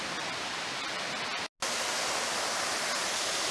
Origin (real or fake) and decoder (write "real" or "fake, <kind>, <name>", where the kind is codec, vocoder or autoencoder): real